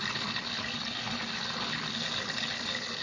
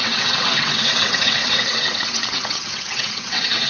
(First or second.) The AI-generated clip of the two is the second